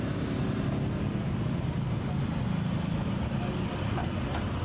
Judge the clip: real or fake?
real